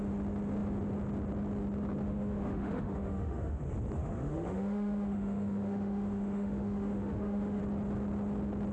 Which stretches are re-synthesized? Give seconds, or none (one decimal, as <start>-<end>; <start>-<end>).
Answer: 2.0-3.6; 4.0-7.6